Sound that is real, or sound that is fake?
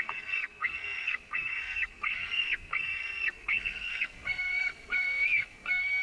fake